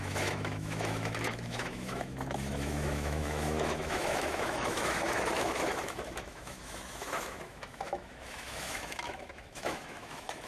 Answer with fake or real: fake